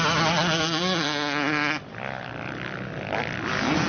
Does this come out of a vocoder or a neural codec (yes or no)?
no